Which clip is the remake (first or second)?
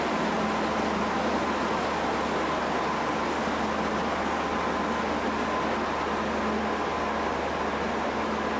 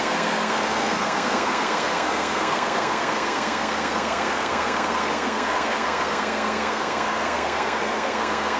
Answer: second